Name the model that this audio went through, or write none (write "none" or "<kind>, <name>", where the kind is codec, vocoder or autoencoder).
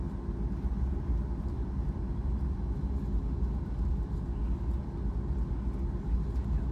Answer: none